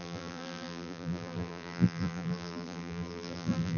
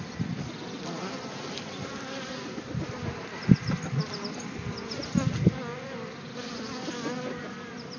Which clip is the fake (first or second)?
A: first